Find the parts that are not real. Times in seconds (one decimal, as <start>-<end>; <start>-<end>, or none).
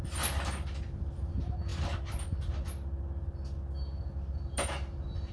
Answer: none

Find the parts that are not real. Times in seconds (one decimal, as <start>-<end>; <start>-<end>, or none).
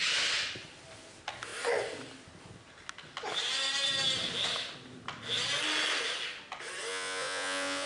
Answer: 6.9-7.9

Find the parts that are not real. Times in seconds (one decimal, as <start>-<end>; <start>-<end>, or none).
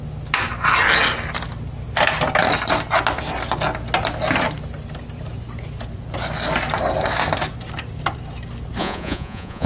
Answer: 8.8-9.7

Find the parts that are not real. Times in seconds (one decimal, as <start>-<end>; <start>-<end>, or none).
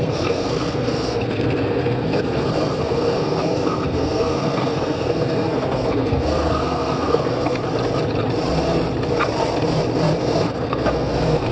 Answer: 0.0-7.6; 10.2-11.5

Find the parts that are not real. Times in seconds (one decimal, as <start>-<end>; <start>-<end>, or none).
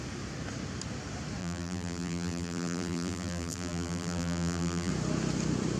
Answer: 1.4-4.9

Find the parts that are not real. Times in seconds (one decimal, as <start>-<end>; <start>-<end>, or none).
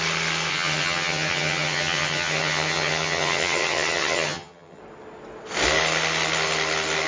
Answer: 0.5-4.8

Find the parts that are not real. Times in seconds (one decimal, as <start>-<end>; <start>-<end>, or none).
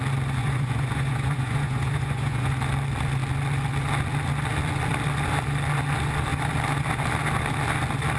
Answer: 0.4-2.5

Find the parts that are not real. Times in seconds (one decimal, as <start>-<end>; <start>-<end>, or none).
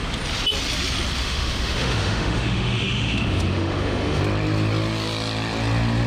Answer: 1.2-4.2